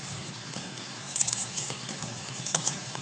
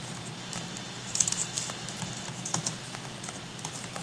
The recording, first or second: second